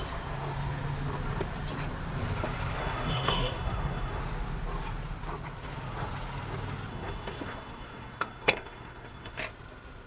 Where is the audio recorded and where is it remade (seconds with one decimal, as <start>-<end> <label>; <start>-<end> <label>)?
0.0-2.8 recorded; 2.8-4.2 remade; 4.2-6.9 recorded; 6.9-9.4 remade; 9.4-10.1 recorded